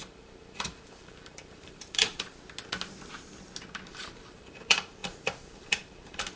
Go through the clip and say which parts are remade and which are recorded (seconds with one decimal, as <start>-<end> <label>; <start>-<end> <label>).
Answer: 0.0-2.3 remade; 2.3-3.6 recorded; 3.6-6.4 remade